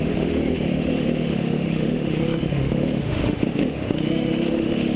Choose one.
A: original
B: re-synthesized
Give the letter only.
B